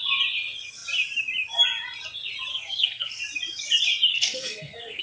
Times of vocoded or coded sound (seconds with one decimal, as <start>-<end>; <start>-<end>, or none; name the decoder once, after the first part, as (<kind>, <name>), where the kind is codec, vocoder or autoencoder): 2.5-3.2 (codec, SNAC); 4.1-5.0